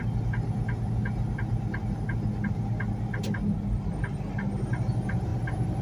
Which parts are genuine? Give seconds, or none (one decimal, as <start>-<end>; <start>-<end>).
0.0-5.8